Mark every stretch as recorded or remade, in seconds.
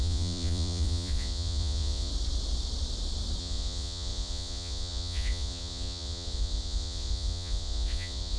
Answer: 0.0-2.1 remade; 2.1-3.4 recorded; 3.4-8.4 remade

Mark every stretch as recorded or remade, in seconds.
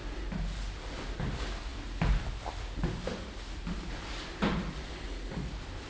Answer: 0.0-5.9 recorded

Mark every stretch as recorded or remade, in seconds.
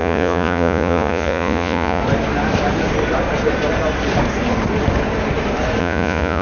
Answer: 0.0-2.0 remade; 2.0-5.8 recorded; 5.8-6.4 remade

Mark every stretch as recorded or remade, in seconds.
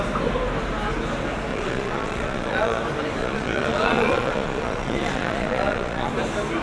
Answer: 0.0-1.5 recorded; 1.5-2.8 remade; 2.8-3.2 recorded; 3.2-6.1 remade; 6.1-6.6 recorded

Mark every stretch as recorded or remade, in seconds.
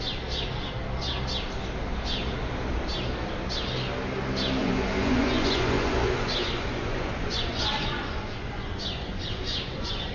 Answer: 0.0-4.6 recorded; 4.6-10.1 remade